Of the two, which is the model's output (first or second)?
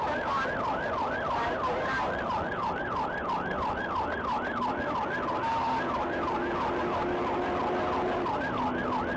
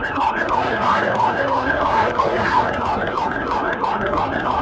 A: second